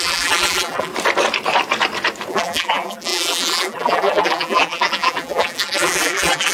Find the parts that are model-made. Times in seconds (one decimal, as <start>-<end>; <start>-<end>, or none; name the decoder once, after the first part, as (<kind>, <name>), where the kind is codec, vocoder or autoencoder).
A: 0.0-0.9 (vocoder, BigVGAN v2); 2.3-6.5